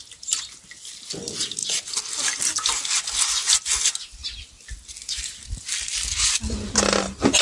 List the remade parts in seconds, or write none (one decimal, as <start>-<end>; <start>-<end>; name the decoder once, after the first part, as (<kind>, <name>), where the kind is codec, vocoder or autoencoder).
1.6-2.4 (vocoder, BigVGAN v2)